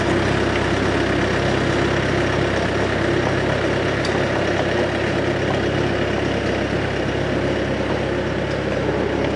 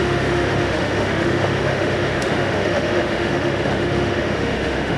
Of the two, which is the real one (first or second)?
first